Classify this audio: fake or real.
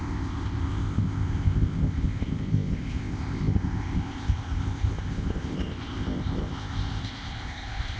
fake